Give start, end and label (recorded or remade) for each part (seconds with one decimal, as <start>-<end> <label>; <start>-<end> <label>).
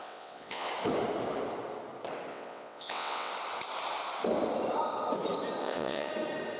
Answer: 0.0-0.7 remade; 0.7-2.3 recorded; 2.3-3.3 remade; 3.3-5.6 recorded; 5.6-6.1 remade; 6.1-6.6 recorded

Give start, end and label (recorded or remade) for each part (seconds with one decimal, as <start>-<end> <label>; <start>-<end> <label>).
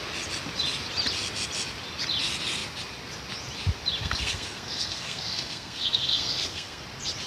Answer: 0.0-4.0 recorded; 4.0-6.8 remade; 6.8-7.3 recorded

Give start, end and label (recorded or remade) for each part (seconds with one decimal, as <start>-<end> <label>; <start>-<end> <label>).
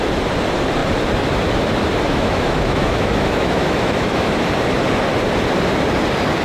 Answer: 0.0-2.1 recorded; 2.1-4.3 remade; 4.3-6.4 recorded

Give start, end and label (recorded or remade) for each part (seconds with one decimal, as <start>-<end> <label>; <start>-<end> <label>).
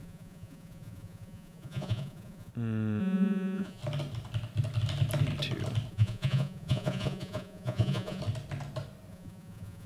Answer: 0.0-2.5 remade; 2.5-3.0 recorded; 3.0-3.8 remade; 3.8-5.9 recorded; 5.9-8.2 remade; 8.2-9.1 recorded; 9.1-9.9 remade